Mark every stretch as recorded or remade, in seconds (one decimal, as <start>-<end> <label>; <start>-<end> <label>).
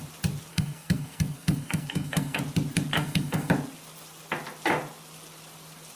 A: 0.0-0.5 recorded; 0.5-2.4 remade; 2.4-2.9 recorded; 2.9-3.5 remade; 3.5-6.0 recorded